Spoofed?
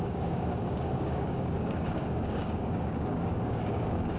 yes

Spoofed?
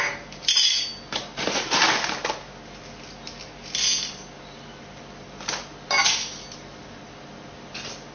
no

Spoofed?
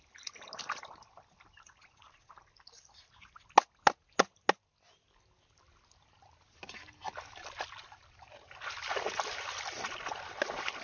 no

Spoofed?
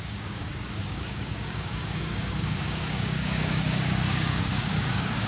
yes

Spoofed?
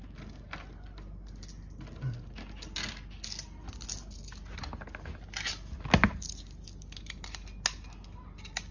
no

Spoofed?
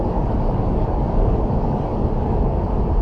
yes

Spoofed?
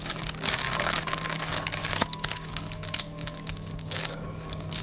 yes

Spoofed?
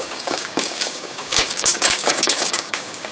yes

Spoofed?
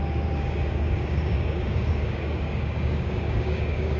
yes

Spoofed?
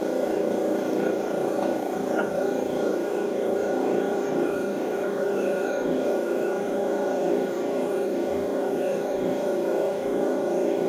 yes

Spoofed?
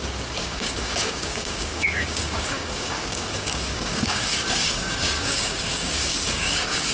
yes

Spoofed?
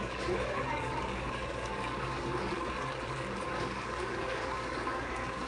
yes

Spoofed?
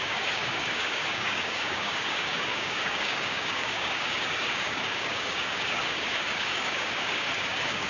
yes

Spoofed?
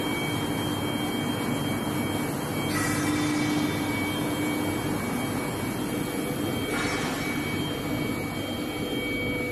no